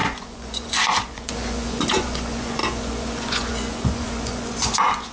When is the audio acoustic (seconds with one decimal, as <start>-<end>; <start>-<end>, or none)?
none